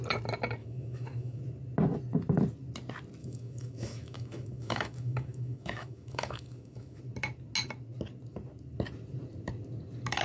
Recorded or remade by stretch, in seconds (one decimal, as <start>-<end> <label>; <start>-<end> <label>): 0.0-0.6 recorded; 0.6-1.4 remade; 1.4-3.2 recorded; 3.2-7.0 remade; 7.0-10.2 recorded